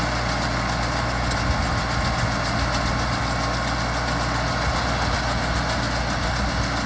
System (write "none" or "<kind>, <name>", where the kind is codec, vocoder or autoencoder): none